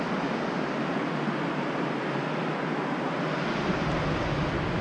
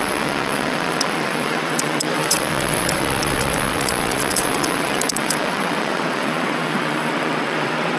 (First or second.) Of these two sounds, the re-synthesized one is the second